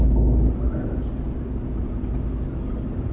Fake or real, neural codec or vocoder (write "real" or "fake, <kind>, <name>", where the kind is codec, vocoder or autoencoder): real